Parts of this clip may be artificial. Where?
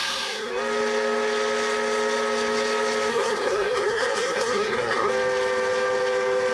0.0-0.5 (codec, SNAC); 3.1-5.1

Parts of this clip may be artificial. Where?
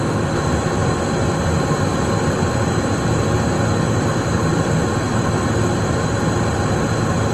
none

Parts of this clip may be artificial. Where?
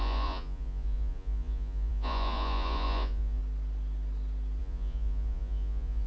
0.0-3.4 (vocoder, Vocos); 4.6-6.1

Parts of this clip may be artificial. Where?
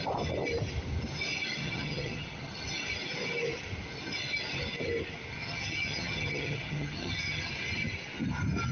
1.6-2.6 (vocoder, HiFi-GAN); 5.3-7.5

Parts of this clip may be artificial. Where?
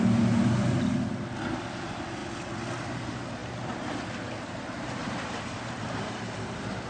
5.0-6.9 (vocoder, BigVGAN v2)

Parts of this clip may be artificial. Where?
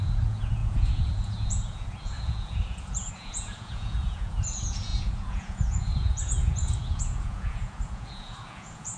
0.0-9.0 (vocoder, Vocos)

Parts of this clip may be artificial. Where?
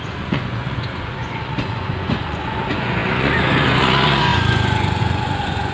0.0-5.7 (vocoder, Vocos)